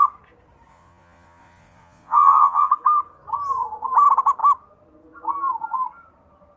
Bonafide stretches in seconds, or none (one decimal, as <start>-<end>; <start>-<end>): 0.0-0.7; 2.7-6.6